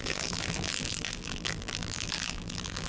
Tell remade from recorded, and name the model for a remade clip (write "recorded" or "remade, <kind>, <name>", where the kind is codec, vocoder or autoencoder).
remade, vocoder, BigVGAN v2